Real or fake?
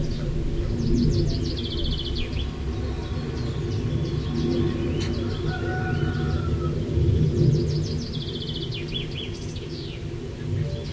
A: real